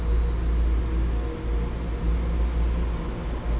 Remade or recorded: recorded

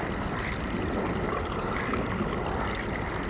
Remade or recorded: recorded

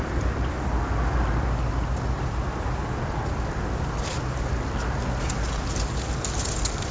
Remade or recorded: recorded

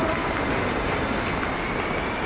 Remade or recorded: recorded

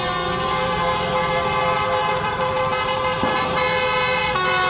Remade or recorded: remade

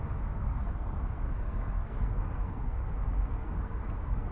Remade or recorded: remade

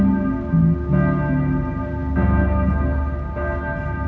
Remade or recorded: recorded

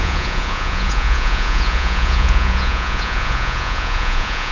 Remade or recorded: remade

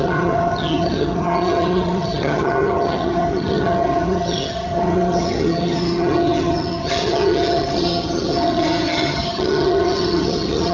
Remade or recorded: remade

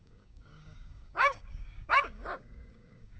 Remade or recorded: remade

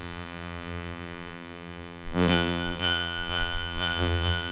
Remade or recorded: remade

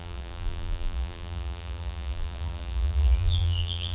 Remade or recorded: remade